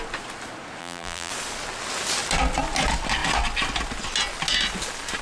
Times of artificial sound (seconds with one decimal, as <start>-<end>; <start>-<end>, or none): 0.8-1.3